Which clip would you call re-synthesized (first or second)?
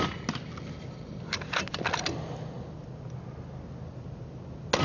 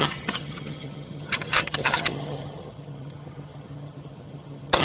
second